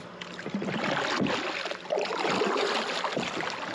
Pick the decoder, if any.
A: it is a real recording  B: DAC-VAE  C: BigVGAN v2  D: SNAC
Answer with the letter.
A